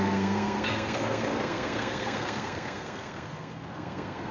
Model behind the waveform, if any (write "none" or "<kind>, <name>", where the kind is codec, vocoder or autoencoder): codec, SNAC